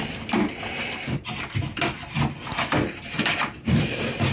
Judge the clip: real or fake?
real